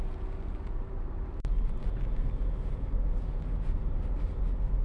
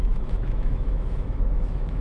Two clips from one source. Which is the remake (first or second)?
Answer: second